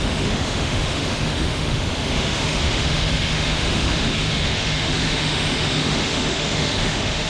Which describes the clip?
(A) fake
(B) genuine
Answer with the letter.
A